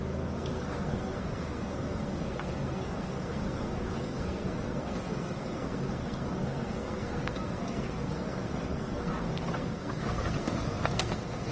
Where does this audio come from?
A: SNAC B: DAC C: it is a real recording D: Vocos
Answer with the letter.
A